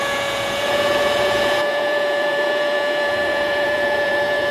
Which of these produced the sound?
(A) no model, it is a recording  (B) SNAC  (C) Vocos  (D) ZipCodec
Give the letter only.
C